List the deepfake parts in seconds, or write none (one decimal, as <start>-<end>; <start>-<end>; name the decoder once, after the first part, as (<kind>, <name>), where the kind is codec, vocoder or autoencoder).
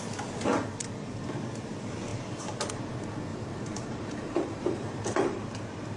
3.3-5.5 (vocoder, BigVGAN v2)